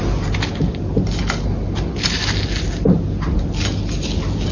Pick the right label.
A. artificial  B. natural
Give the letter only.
B